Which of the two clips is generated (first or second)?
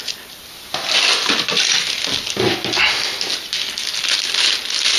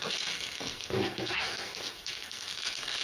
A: second